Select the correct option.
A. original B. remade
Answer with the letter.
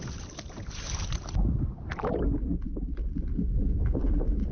A